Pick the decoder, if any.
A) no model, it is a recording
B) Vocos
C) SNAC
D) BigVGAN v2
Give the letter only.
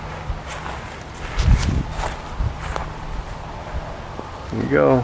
A